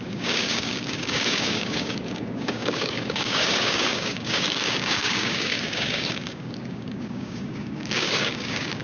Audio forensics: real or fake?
fake